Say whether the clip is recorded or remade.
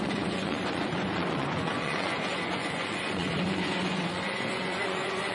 remade